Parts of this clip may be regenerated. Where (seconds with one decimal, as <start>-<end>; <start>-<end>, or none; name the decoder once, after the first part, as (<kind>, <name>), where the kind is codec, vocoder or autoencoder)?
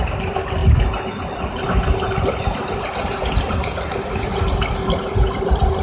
none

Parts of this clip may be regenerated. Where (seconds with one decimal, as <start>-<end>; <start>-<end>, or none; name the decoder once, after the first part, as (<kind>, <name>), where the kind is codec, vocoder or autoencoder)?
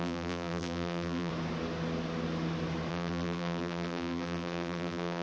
0.0-1.3 (vocoder, BigVGAN v2); 2.9-5.2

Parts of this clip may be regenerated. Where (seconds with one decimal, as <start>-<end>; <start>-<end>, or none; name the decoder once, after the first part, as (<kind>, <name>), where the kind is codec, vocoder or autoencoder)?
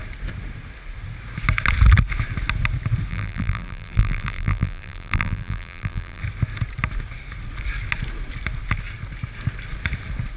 3.1-6.2 (vocoder, BigVGAN v2)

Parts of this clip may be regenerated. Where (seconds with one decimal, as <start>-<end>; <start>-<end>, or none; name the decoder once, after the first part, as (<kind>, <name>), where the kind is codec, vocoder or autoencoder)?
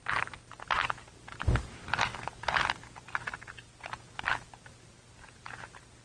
none